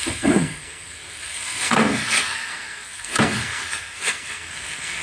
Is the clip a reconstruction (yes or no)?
yes